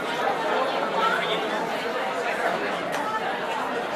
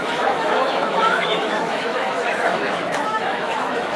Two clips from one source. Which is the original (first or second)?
first